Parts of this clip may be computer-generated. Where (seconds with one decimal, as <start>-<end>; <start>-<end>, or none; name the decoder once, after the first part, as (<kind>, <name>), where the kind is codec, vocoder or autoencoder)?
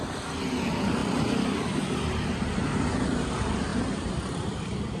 none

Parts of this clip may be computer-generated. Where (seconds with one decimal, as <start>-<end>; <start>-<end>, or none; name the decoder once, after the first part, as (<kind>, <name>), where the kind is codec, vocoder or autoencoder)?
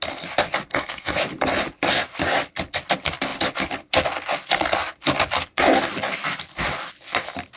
0.7-1.2 (codec, SNAC)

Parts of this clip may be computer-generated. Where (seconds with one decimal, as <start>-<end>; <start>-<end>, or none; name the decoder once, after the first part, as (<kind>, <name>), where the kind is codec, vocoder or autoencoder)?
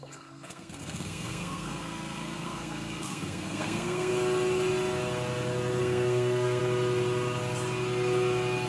0.0-4.1 (codec, SNAC); 5.8-6.6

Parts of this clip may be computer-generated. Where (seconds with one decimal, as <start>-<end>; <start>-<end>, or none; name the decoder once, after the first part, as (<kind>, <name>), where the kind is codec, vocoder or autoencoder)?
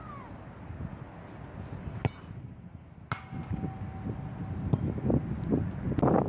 none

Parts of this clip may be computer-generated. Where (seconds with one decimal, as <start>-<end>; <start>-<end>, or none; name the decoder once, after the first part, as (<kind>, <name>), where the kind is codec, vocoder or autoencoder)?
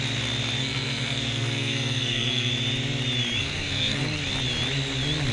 0.6-2.5 (codec, SNAC); 3.4-4.0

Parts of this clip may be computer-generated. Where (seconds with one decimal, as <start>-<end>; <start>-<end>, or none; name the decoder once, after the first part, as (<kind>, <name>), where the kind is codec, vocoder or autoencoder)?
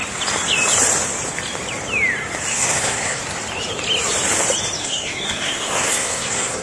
2.5-3.2 (codec, SNAC); 4.8-6.6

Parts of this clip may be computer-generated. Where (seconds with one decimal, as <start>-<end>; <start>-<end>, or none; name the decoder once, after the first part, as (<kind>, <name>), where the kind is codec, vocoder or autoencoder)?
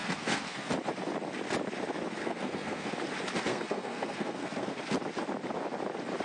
0.0-0.7 (codec, SNAC); 2.2-2.9; 3.5-4.8